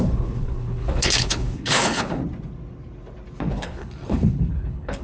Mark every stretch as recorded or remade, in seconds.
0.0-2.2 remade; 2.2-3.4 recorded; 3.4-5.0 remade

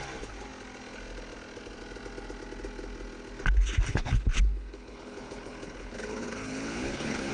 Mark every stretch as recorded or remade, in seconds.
0.0-3.9 recorded; 3.9-7.3 remade

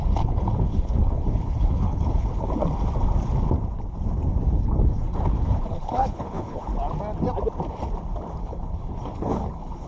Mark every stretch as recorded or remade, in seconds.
0.0-2.6 remade; 2.6-4.5 recorded; 4.5-6.7 remade; 6.7-8.4 recorded; 8.4-9.9 remade

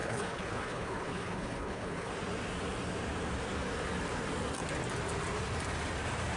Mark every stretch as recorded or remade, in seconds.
0.0-2.1 remade; 2.1-6.4 recorded

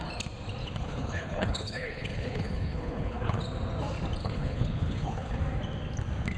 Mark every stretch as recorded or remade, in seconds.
0.0-0.6 recorded; 0.6-3.4 remade; 3.4-4.2 recorded; 4.2-5.4 remade; 5.4-6.4 recorded

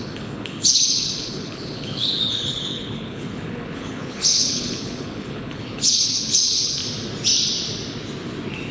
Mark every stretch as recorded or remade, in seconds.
0.0-6.8 remade; 6.8-8.7 recorded

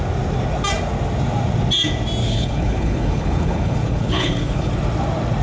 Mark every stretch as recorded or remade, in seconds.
0.0-2.2 recorded; 2.2-4.7 remade; 4.7-5.4 recorded